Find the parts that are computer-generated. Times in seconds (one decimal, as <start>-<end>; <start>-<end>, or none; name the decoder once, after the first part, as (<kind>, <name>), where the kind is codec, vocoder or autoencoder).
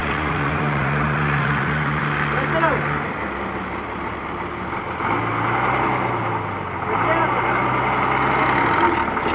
0.0-2.0 (vocoder, Vocos)